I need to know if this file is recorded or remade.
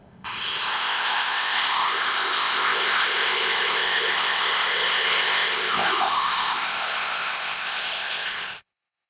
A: remade